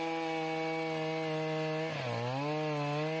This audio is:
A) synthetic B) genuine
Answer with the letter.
B